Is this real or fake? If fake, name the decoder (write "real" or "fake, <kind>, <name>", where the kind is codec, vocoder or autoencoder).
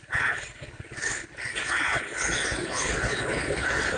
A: fake, codec, HILCodec